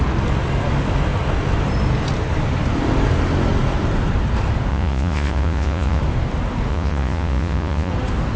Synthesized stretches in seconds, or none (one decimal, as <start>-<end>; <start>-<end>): 4.7-6.0; 6.7-7.9